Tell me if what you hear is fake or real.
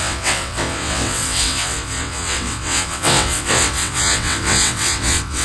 fake